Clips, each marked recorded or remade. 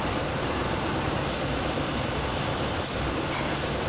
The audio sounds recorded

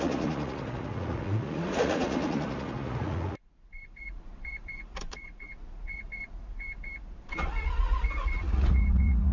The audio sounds remade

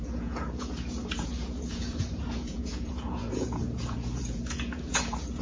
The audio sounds remade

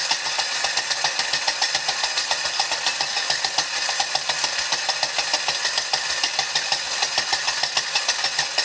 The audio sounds recorded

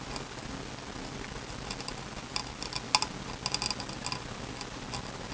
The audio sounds recorded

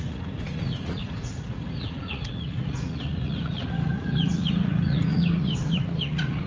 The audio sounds remade